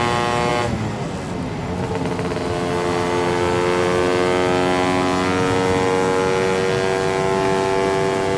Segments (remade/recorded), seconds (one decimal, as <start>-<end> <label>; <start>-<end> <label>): 0.0-8.4 recorded